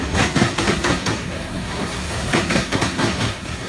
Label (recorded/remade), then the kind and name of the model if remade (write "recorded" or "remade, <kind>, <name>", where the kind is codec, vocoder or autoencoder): remade, codec, SNAC